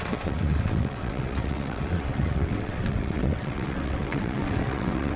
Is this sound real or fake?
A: fake